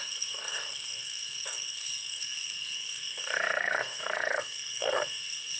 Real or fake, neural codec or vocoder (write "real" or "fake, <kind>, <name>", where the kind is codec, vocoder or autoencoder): fake, codec, SNAC